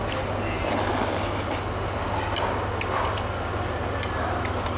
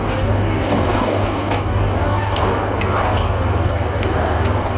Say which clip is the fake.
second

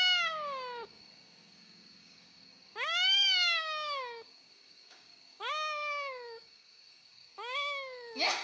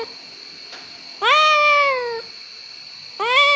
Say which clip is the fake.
first